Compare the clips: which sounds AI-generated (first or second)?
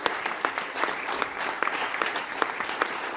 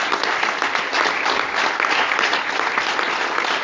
first